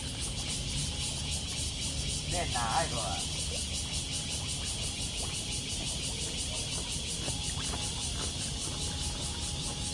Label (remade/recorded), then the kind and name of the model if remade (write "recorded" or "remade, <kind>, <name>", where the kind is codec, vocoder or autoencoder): recorded